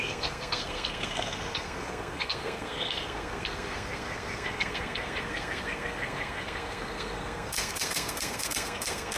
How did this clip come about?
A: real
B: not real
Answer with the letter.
B